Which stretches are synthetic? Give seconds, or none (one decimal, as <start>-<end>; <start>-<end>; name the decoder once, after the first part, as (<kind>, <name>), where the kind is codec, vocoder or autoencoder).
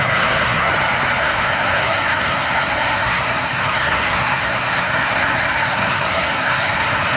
0.0-0.7 (codec, SNAC); 1.2-7.2